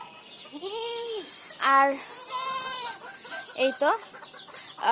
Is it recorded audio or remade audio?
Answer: recorded